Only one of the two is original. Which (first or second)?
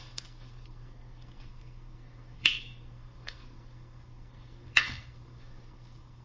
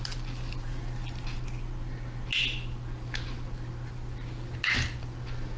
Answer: second